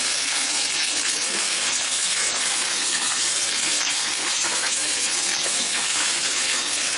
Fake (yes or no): yes